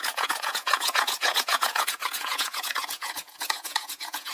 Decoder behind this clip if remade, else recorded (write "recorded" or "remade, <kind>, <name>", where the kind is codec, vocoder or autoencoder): remade, vocoder, Vocos